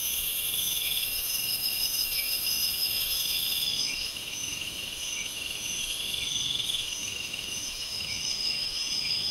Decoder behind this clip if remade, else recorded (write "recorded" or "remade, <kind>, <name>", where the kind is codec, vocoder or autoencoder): remade, autoencoder, DAC-VAE